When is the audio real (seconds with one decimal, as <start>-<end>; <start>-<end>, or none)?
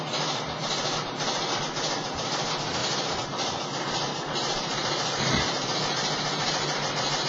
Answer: 0.0-2.8